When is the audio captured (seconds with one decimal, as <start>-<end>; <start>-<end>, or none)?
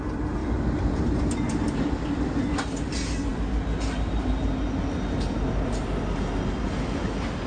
0.0-0.4; 1.2-7.5